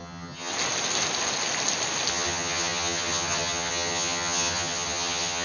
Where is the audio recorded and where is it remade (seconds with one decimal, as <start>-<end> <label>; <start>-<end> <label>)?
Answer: 0.0-0.5 remade; 0.5-2.1 recorded; 2.1-5.4 remade